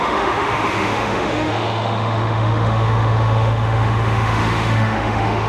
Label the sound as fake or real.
fake